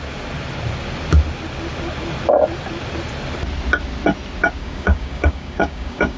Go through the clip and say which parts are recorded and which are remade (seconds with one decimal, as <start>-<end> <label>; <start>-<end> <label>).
0.0-4.6 recorded; 4.6-6.2 remade